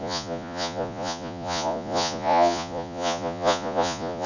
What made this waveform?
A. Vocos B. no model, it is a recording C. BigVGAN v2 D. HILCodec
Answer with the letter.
A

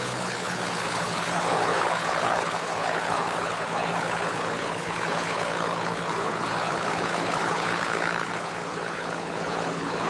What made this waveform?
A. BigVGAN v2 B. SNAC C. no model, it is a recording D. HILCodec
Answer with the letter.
D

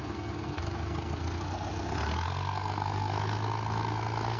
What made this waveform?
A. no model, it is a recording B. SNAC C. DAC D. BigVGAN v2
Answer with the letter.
B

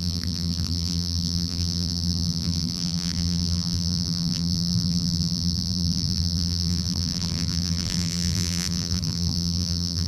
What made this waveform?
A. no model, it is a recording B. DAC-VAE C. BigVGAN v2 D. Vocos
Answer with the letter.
C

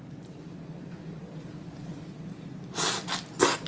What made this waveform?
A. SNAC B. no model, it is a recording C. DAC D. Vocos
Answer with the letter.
B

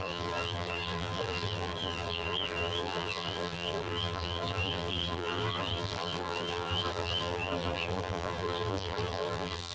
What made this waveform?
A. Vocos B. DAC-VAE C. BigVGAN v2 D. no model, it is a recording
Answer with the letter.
C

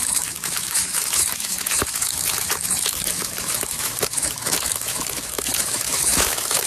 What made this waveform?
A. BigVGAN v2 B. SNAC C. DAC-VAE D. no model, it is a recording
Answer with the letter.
C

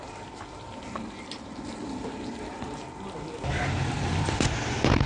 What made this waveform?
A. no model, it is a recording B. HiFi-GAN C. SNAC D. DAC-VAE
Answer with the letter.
A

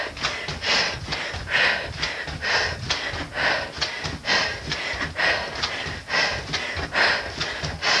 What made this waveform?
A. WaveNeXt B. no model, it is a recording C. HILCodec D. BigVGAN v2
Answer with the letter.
B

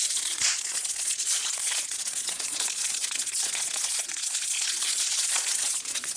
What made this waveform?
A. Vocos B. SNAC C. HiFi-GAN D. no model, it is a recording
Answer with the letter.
A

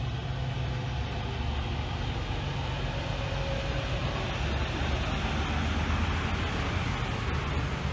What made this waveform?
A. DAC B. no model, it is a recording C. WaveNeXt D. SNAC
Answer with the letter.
B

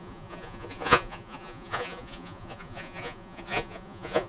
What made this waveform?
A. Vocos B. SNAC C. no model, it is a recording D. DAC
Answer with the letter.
A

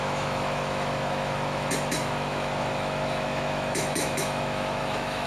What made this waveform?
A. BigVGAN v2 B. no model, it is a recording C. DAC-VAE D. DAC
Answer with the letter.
C